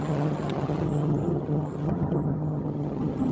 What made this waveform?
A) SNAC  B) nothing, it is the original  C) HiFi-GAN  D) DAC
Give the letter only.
C